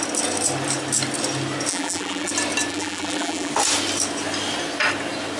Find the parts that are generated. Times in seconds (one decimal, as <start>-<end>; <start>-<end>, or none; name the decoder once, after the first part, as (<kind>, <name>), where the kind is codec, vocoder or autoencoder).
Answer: 1.7-2.3 (vocoder, BigVGAN v2); 2.7-3.5